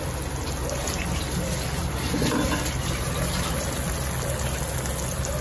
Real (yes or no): yes